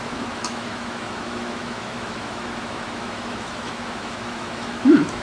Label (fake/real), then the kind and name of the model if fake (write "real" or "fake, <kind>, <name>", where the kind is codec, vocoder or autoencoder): fake, autoencoder, DAC-VAE